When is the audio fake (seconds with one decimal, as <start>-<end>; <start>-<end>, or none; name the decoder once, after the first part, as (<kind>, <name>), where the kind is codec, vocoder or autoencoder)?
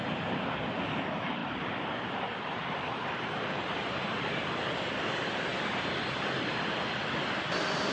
1.4-4.3 (vocoder, BigVGAN v2)